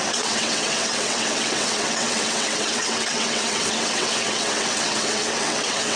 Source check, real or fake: fake